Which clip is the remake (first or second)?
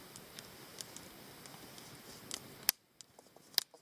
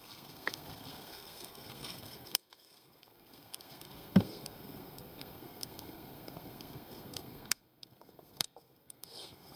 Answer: second